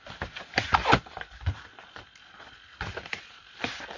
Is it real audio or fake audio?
real